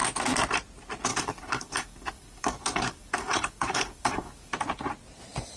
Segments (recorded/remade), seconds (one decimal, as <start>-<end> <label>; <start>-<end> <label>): 0.0-1.1 recorded; 1.1-4.5 remade; 4.5-5.6 recorded